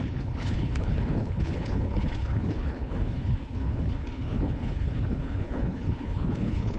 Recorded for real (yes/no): no